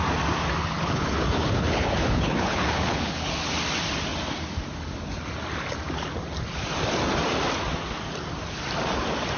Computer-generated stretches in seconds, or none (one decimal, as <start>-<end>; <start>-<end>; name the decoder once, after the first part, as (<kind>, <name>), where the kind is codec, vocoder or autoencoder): 0.6-3.5 (codec, HILCodec)